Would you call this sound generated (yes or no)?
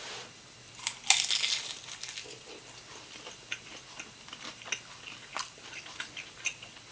no